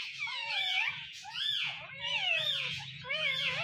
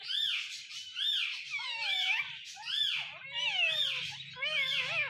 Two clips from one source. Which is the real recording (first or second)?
second